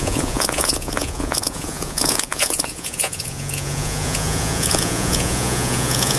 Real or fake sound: fake